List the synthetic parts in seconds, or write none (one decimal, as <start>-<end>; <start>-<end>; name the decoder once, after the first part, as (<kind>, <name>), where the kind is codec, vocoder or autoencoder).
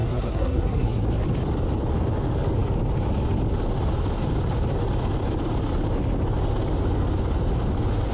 0.0-1.1 (codec, SNAC)